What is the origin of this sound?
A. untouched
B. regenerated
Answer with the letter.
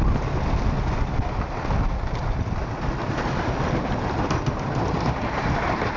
A